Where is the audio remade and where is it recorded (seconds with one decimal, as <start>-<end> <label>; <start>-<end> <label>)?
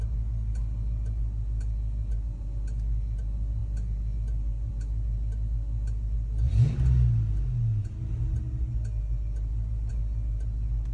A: 0.0-10.9 recorded